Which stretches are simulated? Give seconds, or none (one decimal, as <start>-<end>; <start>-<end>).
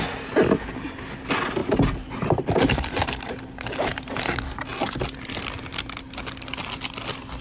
1.6-4.4